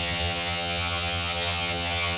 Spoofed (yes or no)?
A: yes